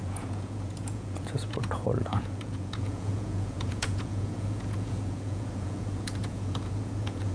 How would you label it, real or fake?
fake